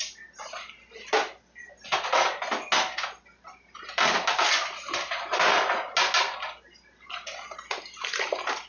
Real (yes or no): yes